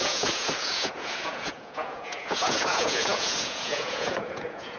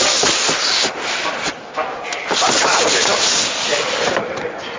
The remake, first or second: first